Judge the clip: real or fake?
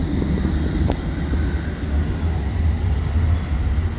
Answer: real